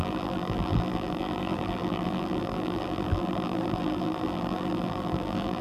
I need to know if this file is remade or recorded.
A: remade